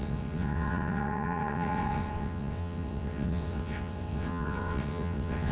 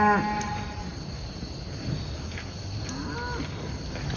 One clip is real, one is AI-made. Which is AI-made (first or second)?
first